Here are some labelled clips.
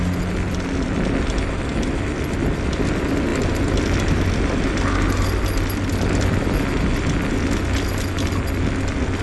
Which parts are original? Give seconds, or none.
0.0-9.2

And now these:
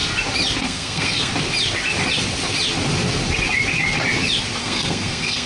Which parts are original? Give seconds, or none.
0.0-0.6; 1.3-4.6

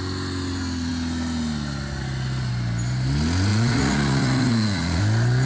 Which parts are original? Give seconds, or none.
0.0-3.5; 5.0-5.5

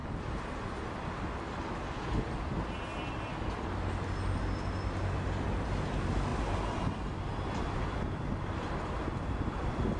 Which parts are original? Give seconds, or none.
0.0-10.0

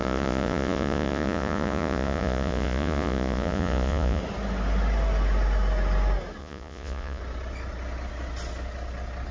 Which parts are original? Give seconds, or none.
4.2-6.4; 7.2-9.3

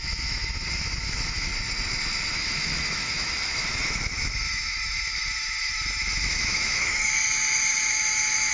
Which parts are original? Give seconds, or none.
1.5-2.3; 7.2-7.9